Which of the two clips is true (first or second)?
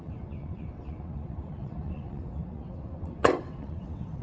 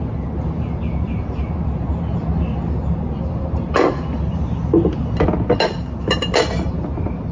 second